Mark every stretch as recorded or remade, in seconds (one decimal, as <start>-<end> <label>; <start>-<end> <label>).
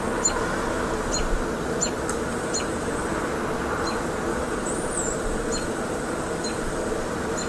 0.0-2.3 recorded; 2.3-3.1 remade; 3.1-4.3 recorded; 4.3-6.9 remade; 6.9-7.5 recorded